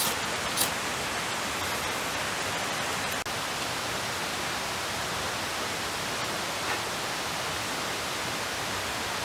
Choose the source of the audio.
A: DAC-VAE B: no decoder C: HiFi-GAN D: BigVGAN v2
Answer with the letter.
B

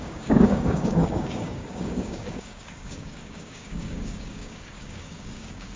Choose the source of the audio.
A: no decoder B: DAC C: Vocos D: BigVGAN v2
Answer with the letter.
B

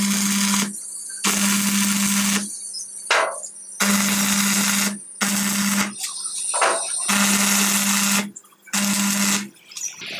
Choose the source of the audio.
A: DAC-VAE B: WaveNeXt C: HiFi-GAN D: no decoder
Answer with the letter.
D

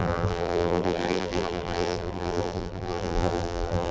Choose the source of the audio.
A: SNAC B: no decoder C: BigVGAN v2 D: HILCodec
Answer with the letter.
C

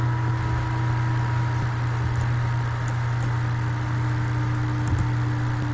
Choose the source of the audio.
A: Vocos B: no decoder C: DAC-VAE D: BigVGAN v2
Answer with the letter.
B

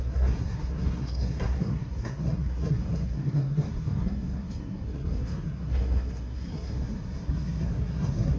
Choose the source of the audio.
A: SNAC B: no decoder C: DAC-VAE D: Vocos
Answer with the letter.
A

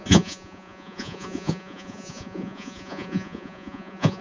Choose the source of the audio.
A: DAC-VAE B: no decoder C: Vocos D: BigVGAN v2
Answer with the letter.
C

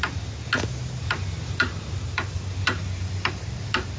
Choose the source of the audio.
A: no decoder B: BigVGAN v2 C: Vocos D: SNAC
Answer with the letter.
A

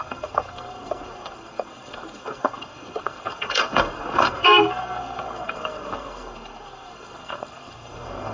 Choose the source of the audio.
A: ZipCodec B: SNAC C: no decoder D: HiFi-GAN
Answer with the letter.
B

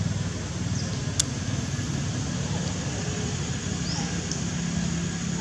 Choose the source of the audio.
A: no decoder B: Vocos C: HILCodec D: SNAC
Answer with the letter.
A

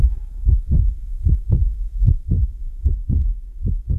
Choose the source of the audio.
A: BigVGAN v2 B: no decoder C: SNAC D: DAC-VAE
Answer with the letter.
C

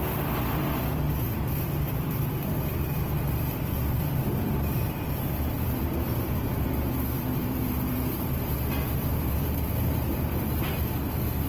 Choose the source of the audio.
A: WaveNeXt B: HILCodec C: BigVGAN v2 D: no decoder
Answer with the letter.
C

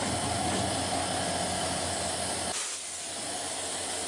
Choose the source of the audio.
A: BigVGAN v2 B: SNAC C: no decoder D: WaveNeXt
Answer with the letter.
C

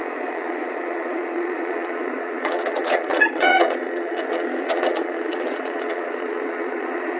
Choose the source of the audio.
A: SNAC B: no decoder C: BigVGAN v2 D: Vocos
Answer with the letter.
D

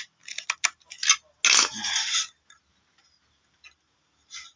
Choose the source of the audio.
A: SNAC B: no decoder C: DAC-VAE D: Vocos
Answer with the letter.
B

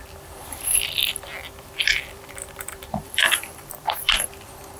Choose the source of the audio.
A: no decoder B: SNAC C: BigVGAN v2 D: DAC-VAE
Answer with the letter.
C